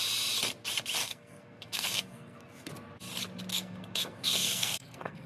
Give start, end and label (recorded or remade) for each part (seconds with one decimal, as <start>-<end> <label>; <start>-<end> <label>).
0.0-1.0 recorded; 1.0-2.7 remade; 2.7-3.5 recorded; 3.5-5.3 remade